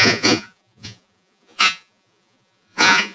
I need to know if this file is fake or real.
fake